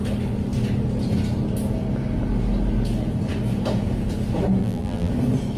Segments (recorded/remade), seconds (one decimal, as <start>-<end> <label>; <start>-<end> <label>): 0.0-4.6 recorded; 4.6-5.1 remade; 5.1-5.6 recorded